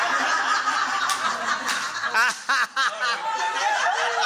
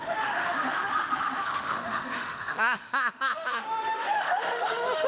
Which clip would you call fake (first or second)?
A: second